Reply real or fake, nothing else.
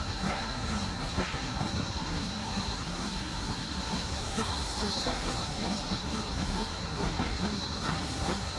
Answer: fake